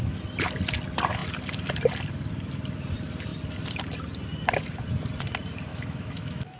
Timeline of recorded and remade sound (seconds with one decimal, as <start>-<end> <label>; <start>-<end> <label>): 0.0-5.7 recorded; 5.7-6.6 remade